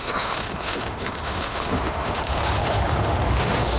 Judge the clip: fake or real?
fake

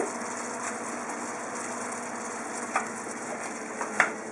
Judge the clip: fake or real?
real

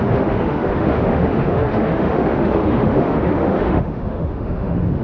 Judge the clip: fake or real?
fake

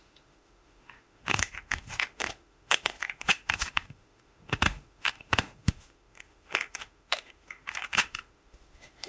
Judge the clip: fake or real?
fake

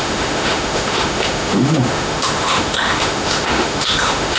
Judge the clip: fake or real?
fake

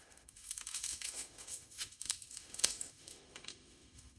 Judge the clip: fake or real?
fake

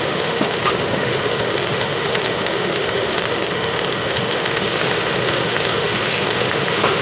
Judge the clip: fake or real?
fake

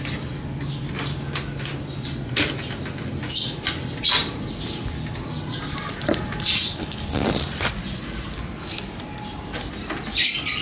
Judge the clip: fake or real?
real